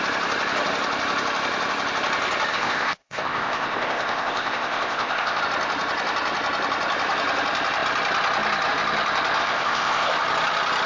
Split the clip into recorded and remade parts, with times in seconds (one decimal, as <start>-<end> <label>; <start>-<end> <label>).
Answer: 0.0-2.5 recorded; 2.5-5.4 remade; 5.4-9.4 recorded; 9.4-10.1 remade; 10.1-10.9 recorded